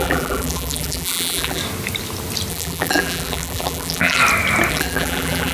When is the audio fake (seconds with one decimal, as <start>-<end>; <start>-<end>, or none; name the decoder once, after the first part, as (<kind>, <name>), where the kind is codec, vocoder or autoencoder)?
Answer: 0.0-1.6 (vocoder, BigVGAN v2); 2.5-4.2; 4.7-5.5